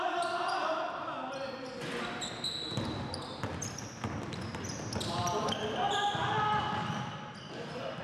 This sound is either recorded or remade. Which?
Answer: recorded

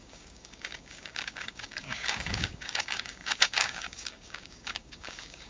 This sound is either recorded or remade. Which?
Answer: remade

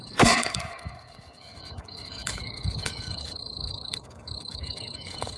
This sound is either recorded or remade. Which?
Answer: remade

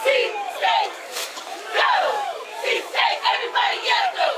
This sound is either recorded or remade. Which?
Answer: remade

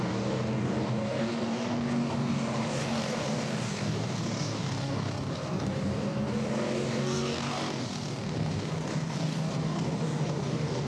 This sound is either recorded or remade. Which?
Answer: remade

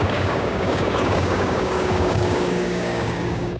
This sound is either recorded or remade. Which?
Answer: remade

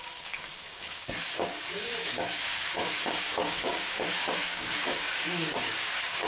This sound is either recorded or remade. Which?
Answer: remade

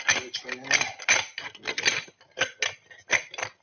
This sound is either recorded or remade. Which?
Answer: recorded